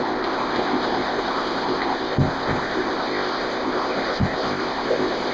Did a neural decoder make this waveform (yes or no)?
yes